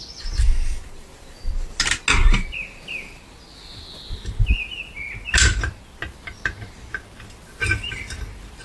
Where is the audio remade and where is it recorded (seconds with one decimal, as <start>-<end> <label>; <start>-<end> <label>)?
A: 0.0-8.6 recorded